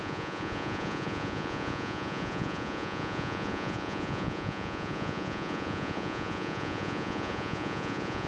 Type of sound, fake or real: fake